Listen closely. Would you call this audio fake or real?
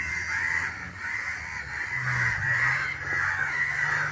real